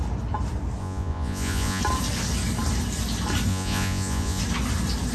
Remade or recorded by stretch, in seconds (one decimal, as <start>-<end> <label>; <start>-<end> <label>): 0.0-0.8 recorded; 0.8-1.8 remade; 1.8-3.5 recorded; 3.5-4.4 remade; 4.4-5.1 recorded